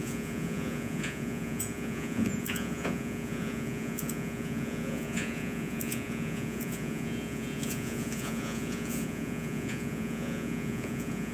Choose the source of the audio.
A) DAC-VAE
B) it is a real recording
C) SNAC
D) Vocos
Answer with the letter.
D